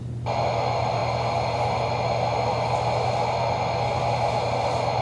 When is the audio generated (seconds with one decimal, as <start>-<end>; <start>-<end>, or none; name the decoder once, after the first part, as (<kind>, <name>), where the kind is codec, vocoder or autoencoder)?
none